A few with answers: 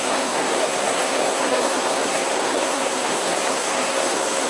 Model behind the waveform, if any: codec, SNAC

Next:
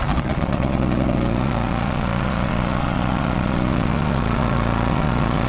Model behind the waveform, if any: vocoder, Vocos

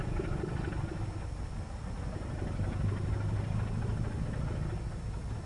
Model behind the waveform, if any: none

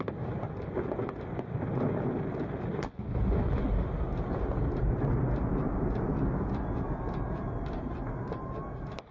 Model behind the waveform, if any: none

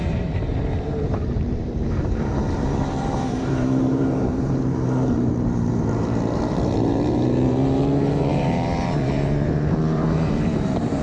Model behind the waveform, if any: vocoder, BigVGAN v2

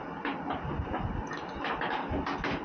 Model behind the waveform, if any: none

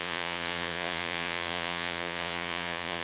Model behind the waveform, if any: vocoder, Vocos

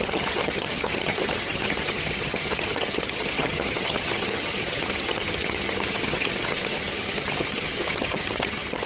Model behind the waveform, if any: vocoder, HiFi-GAN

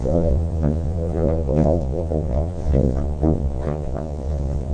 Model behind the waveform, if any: vocoder, Vocos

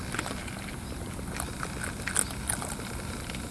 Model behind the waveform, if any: none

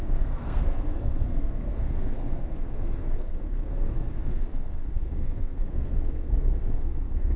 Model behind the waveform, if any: codec, SNAC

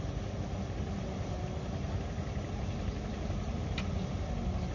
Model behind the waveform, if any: none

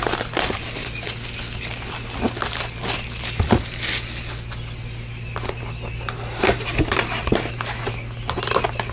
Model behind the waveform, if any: none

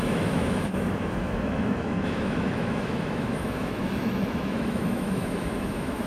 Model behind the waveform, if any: autoencoder, DAC-VAE